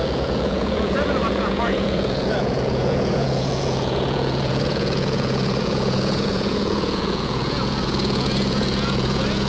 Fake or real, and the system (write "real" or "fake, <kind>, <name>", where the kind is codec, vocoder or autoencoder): fake, vocoder, Vocos